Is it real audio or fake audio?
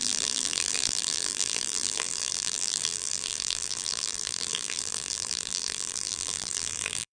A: fake